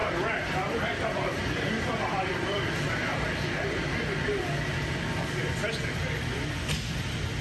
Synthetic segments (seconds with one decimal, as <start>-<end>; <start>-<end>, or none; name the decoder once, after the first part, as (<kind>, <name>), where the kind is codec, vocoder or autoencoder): 0.0-4.4 (vocoder, BigVGAN v2)